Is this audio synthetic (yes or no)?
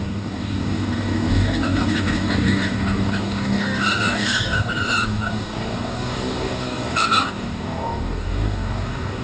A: yes